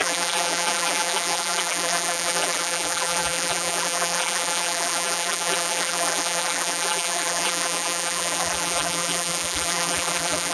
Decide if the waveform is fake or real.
fake